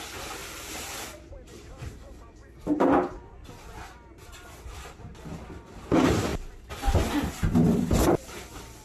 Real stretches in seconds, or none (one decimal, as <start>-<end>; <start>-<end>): 0.0-0.4; 3.3-6.3; 8.4-8.8

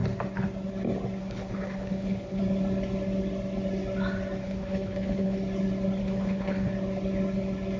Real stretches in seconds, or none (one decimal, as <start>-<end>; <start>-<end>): 0.0-1.2; 2.4-4.4; 5.4-6.0; 6.7-7.8

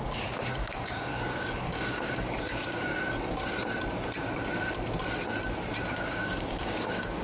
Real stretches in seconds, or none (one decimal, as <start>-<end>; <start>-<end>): 2.9-5.8

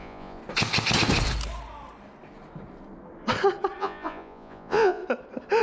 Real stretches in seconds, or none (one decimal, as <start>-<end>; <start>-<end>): 0.4-3.8; 5.0-5.6

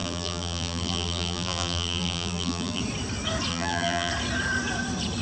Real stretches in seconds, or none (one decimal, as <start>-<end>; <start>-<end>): 2.8-3.5; 4.1-5.2